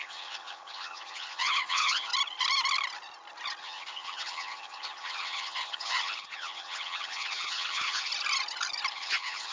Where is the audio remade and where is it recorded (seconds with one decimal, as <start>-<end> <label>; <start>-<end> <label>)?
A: 0.0-2.1 remade; 2.1-3.6 recorded; 3.6-8.1 remade; 8.1-8.9 recorded; 8.9-9.5 remade